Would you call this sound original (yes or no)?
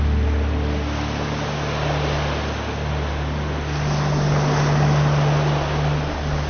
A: yes